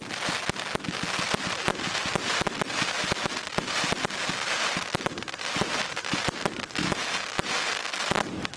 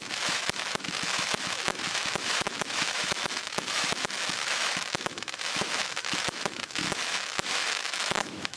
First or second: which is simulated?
second